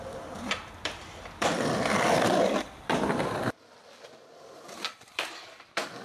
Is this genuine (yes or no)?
no